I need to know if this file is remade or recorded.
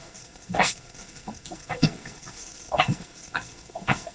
remade